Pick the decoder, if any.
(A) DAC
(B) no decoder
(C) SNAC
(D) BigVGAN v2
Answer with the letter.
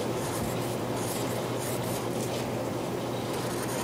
D